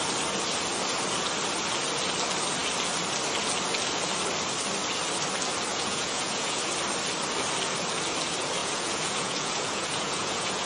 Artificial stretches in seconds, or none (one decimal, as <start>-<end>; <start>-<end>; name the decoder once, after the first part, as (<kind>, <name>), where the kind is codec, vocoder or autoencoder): 5.7-6.6 (vocoder, Vocos); 8.6-10.7